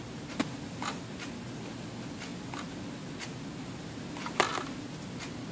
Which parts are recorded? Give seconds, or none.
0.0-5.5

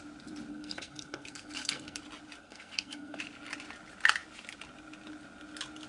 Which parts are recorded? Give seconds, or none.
0.0-0.5; 2.0-2.4; 3.2-5.9